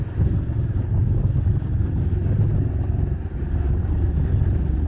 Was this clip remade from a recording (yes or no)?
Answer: no